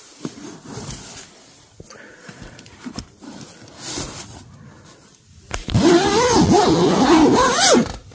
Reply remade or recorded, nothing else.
recorded